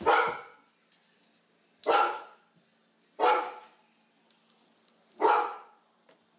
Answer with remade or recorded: recorded